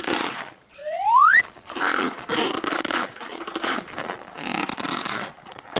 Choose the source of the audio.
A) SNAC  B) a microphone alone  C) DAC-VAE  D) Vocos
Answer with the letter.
D